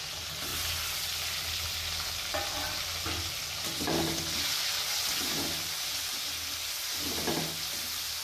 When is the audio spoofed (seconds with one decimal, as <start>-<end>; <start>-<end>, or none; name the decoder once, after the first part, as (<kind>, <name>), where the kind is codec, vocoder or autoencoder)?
none